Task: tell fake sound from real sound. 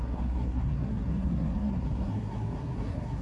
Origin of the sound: fake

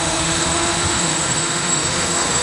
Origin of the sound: fake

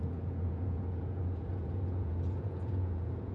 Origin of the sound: fake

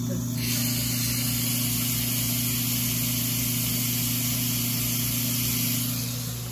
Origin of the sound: real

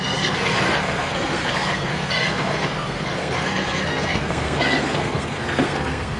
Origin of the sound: fake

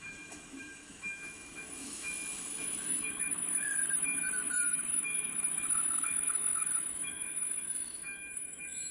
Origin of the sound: fake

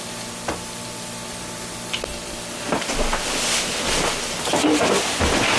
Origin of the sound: real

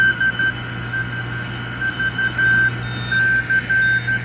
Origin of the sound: real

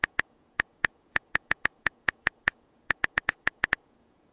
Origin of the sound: fake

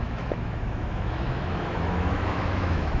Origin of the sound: fake